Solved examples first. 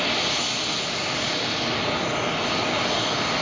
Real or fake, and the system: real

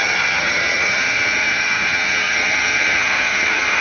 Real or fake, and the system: fake, vocoder, HiFi-GAN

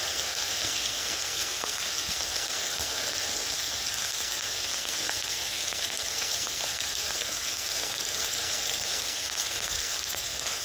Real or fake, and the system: fake, codec, SNAC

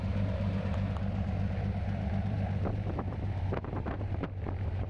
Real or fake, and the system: fake, vocoder, BigVGAN v2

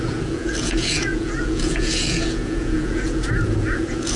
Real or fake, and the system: fake, vocoder, Vocos